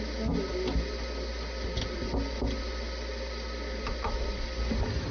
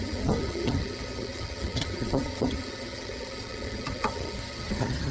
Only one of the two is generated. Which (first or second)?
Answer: second